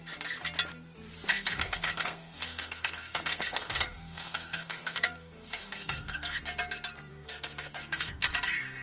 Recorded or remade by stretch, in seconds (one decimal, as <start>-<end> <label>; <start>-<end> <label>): 0.0-1.3 recorded; 1.3-6.4 remade; 6.4-7.1 recorded; 7.1-8.3 remade; 8.3-8.8 recorded